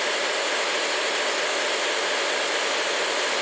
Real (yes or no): yes